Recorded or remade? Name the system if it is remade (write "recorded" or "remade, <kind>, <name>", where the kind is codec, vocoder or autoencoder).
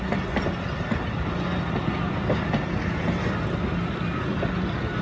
recorded